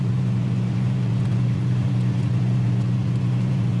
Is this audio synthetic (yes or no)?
yes